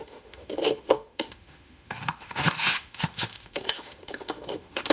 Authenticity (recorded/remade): remade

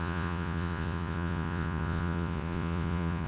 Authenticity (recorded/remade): remade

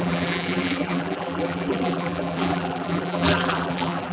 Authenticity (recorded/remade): remade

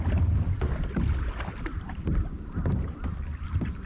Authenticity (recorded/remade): remade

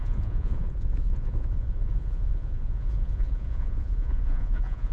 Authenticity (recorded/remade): remade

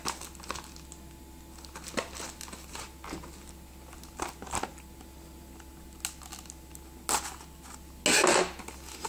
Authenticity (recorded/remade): recorded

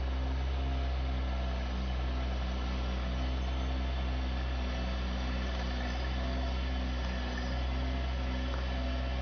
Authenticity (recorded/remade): recorded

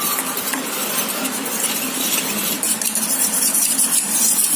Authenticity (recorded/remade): remade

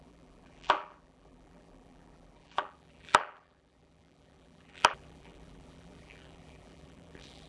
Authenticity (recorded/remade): remade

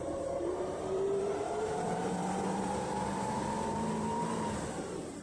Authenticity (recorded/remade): remade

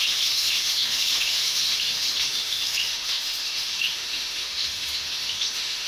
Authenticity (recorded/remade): remade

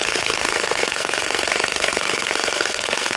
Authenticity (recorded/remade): remade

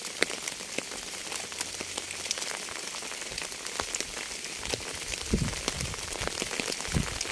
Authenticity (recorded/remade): recorded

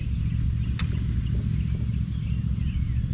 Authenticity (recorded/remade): recorded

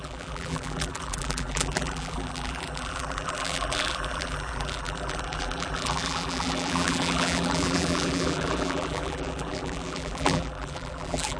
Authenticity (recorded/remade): remade